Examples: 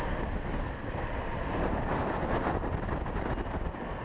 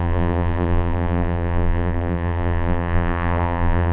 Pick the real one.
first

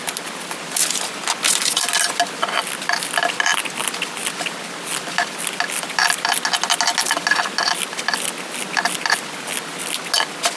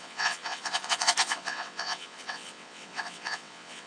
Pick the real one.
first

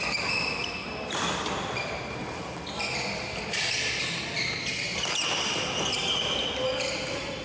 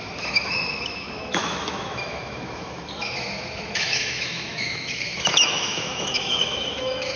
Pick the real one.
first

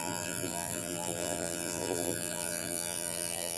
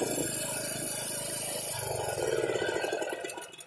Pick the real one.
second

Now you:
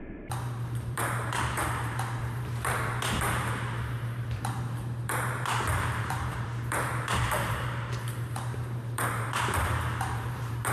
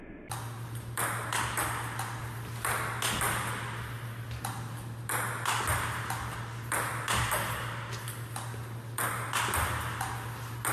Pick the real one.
second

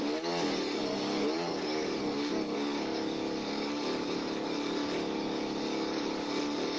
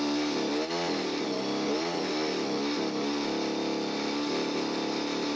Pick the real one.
second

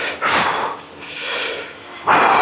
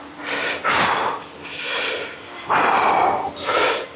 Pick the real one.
first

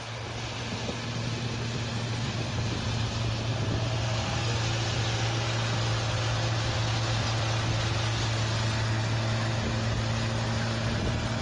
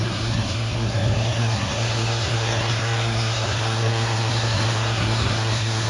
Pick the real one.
first